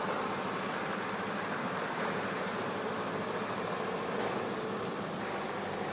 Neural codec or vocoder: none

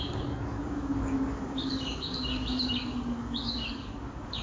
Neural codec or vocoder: codec, DAC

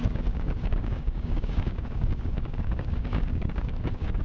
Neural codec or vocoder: codec, DAC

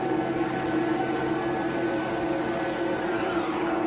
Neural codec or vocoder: none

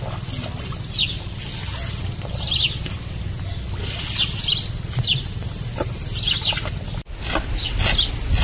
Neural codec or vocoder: none